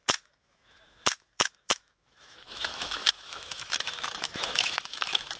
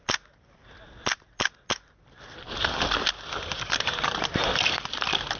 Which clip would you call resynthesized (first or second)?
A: first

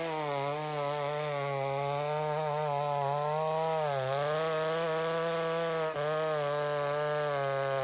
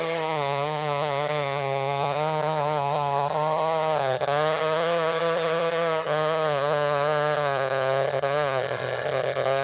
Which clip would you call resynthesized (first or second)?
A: second